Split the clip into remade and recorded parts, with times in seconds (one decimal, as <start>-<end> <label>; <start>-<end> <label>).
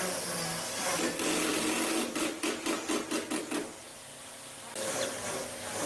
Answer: 0.0-1.5 recorded; 1.5-2.1 remade; 2.1-5.9 recorded